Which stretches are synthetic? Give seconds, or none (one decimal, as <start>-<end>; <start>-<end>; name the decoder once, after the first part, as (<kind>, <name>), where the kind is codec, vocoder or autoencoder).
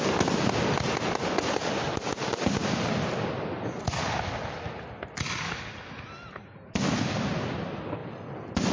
none